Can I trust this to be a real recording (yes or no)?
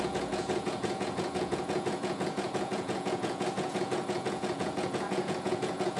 no